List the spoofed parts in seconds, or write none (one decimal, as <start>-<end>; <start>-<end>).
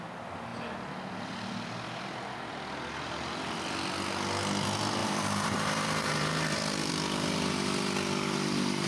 5.0-6.9